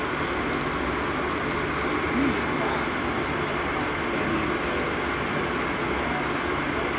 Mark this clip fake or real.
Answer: real